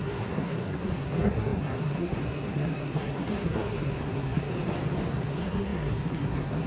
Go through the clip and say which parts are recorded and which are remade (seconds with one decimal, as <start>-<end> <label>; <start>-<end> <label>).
0.0-4.5 remade; 4.5-5.1 recorded; 5.1-6.7 remade

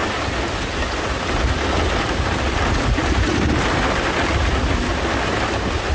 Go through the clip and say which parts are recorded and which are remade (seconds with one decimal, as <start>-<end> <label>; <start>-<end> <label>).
0.0-5.9 recorded

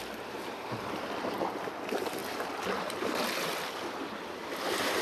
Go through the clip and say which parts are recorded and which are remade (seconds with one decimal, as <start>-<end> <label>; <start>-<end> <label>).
0.0-5.0 recorded

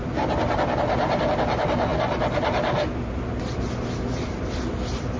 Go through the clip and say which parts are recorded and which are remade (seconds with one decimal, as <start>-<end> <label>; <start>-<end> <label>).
0.0-5.2 recorded

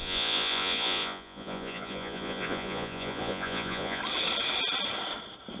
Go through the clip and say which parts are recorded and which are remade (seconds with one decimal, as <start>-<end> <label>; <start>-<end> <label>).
0.0-4.0 remade; 4.0-5.6 recorded

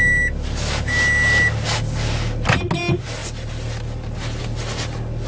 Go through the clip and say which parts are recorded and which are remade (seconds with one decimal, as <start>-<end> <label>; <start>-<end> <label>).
0.0-5.3 recorded

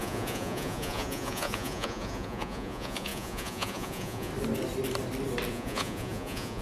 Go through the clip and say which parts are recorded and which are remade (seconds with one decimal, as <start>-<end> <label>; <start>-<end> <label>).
0.0-4.3 remade; 4.3-5.5 recorded; 5.5-6.6 remade